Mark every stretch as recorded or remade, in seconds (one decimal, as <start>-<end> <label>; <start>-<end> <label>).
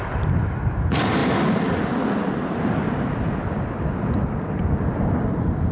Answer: 0.0-5.7 recorded